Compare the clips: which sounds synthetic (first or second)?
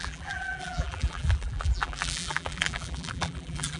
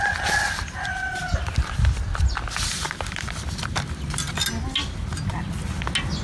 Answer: first